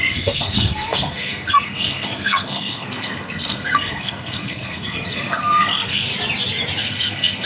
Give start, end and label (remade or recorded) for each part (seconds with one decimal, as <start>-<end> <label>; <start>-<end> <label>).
0.0-6.1 remade; 6.1-6.8 recorded; 6.8-7.5 remade